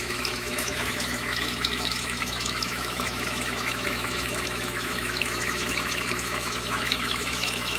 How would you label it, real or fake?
fake